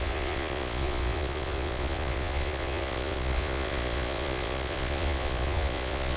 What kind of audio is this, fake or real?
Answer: fake